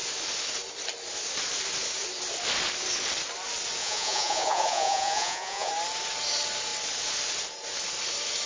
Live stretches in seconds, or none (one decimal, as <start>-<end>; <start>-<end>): 0.0-3.8; 5.7-8.5